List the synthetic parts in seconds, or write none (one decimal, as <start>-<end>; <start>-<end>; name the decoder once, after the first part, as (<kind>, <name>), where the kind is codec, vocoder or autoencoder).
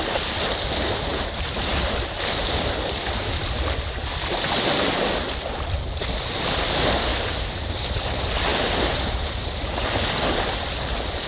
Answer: none